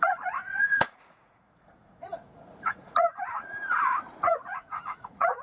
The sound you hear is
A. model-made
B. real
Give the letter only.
A